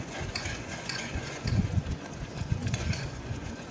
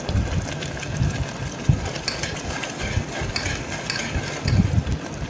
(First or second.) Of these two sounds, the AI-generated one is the first